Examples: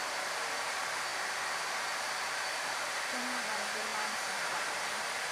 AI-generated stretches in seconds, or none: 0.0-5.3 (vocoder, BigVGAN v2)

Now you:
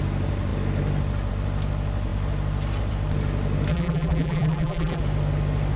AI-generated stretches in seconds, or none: 3.7-5.0 (vocoder, BigVGAN v2)

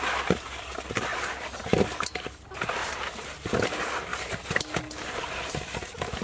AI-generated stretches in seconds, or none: 2.8-3.5 (vocoder, BigVGAN v2)